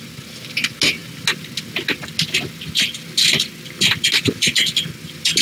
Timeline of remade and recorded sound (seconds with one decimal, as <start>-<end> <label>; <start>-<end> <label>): 0.0-5.4 recorded